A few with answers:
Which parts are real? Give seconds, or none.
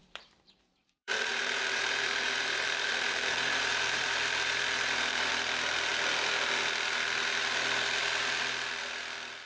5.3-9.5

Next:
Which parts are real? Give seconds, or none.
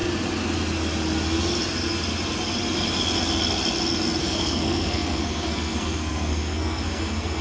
0.0-4.2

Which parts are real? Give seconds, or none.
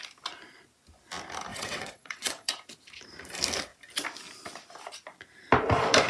0.0-1.5; 2.5-6.1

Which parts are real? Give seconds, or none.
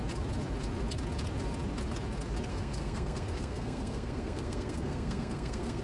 0.0-2.5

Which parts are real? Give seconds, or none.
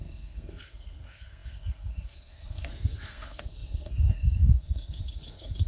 none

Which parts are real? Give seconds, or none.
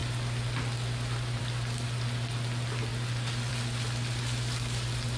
0.0-5.2